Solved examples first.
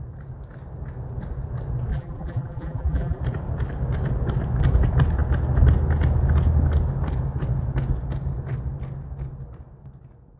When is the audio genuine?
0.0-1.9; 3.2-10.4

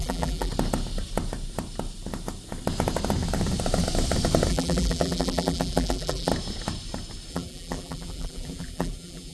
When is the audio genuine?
0.5-4.5; 6.3-7.3